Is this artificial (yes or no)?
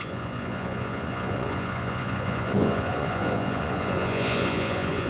yes